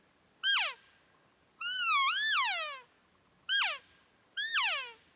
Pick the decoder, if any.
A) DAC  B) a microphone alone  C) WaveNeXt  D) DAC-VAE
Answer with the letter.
B